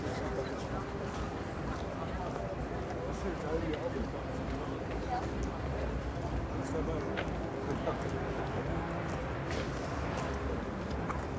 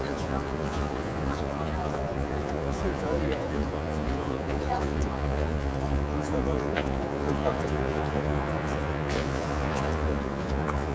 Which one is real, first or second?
first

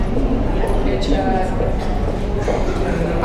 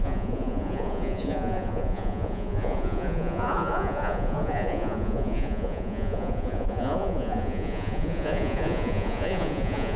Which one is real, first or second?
first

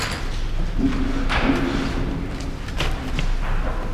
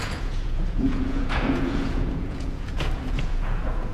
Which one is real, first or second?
first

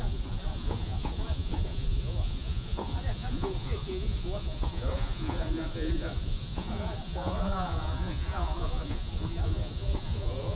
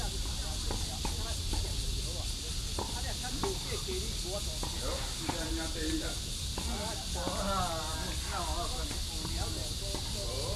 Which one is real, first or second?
second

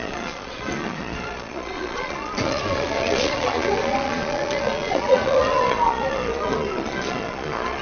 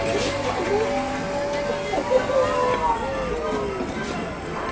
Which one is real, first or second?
second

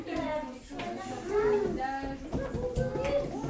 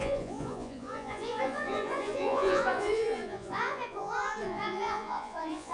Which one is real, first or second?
first